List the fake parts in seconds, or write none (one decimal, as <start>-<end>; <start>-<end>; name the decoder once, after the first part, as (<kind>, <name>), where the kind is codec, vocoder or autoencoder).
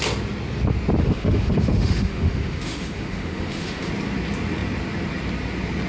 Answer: 1.0-3.9 (autoencoder, DAC-VAE)